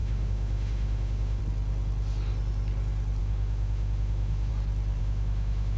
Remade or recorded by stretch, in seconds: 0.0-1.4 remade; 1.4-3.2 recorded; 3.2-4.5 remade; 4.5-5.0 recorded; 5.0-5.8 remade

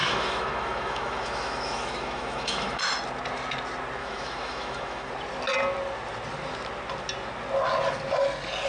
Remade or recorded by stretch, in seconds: 0.0-2.8 remade; 2.8-4.0 recorded; 4.0-5.1 remade; 5.1-8.7 recorded

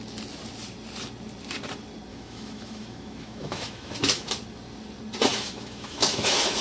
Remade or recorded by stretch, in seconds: 0.0-2.1 recorded; 2.1-4.3 remade; 4.3-5.3 recorded; 5.3-6.6 remade

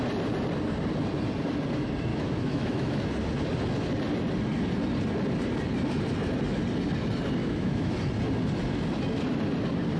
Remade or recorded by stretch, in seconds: 0.0-2.1 recorded; 2.1-3.0 remade; 3.0-7.4 recorded; 7.4-8.0 remade; 8.0-10.0 recorded